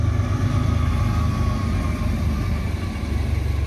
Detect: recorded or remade recorded